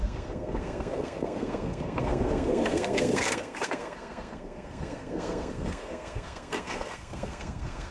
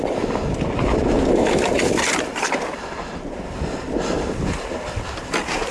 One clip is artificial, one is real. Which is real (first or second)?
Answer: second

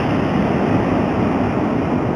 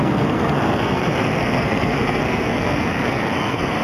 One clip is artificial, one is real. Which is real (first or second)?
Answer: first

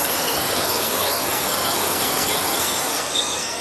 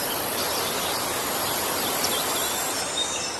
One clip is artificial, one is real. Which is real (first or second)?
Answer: second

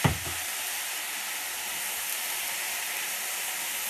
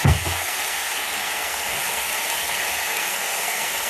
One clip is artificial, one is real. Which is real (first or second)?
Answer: first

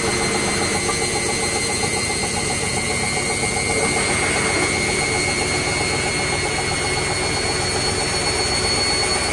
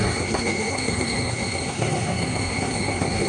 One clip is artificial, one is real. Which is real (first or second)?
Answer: first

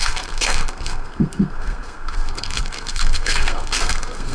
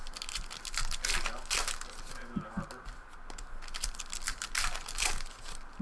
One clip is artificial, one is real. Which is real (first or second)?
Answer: second